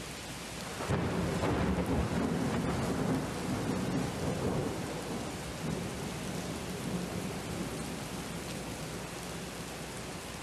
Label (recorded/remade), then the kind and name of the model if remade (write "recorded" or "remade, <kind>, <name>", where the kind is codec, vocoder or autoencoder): recorded